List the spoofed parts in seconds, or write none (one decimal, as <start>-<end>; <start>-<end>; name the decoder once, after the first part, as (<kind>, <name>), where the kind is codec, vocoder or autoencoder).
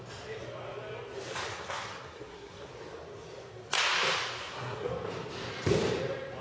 1.5-2.7 (codec, SNAC); 4.4-4.9